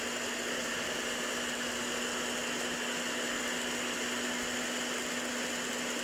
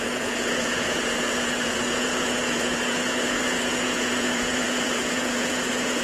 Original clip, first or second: first